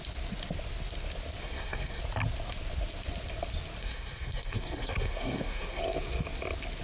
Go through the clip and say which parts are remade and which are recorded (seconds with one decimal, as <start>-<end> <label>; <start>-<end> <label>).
0.0-1.4 recorded; 1.4-2.0 remade; 2.0-3.8 recorded; 3.8-5.8 remade; 5.8-6.8 recorded